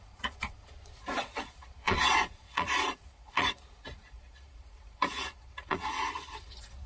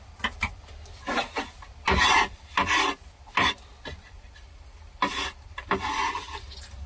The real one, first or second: second